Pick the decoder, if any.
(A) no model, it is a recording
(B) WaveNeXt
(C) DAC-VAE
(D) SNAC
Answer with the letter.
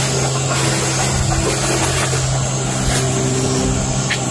A